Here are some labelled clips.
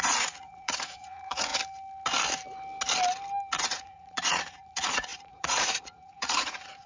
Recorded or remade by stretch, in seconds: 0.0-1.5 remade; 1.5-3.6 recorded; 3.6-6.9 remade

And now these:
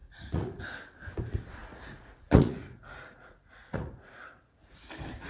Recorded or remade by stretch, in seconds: 0.0-0.6 remade; 0.6-1.6 recorded; 1.6-4.8 remade; 4.8-5.3 recorded

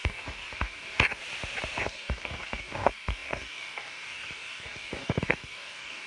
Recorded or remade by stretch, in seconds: 0.0-1.2 remade; 1.2-1.8 recorded; 1.8-6.1 remade

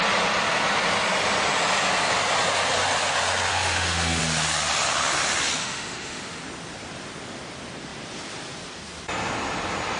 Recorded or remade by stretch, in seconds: 0.0-3.5 recorded; 3.5-4.2 remade; 4.2-5.6 recorded; 5.6-6.4 remade; 6.4-10.0 recorded

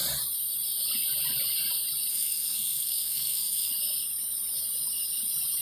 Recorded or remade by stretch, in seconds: 0.0-2.1 recorded; 2.1-3.7 remade; 3.7-5.6 recorded

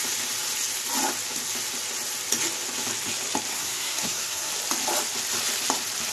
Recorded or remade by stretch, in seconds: 0.0-3.5 recorded; 3.5-4.5 remade; 4.5-6.1 recorded

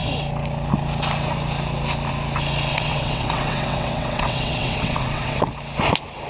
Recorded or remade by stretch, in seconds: 0.0-2.7 recorded; 2.7-5.5 remade; 5.5-6.3 recorded

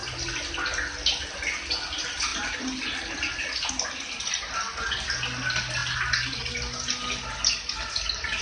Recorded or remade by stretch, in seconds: 0.0-8.4 recorded